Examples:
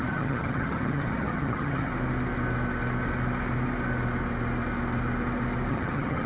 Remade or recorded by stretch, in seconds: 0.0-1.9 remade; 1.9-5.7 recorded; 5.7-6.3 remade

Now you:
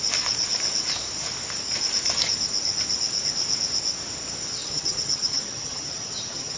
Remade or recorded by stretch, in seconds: 0.0-4.6 recorded; 4.6-6.6 remade

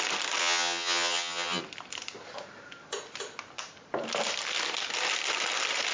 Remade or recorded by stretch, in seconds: 0.0-0.4 recorded; 0.4-1.6 remade; 1.6-5.9 recorded

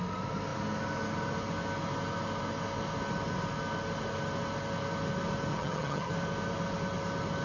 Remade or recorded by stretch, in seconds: 0.0-5.5 recorded; 5.5-6.1 remade; 6.1-7.4 recorded

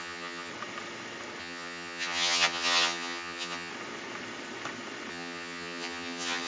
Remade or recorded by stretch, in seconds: 0.0-0.5 remade; 0.5-1.4 recorded; 1.4-3.7 remade; 3.7-5.1 recorded; 5.1-6.5 remade

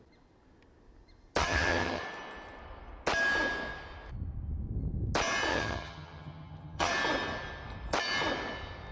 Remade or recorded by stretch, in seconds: 0.0-1.4 recorded; 1.4-2.0 remade; 2.0-5.5 recorded; 5.5-6.9 remade; 6.9-8.9 recorded

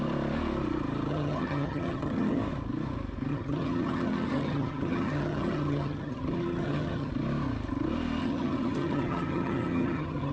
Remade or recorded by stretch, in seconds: 0.0-1.1 recorded; 1.1-2.4 remade; 2.4-3.3 recorded; 3.3-7.1 remade; 7.1-8.2 recorded; 8.2-10.3 remade